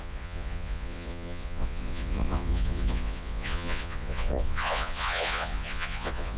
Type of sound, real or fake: fake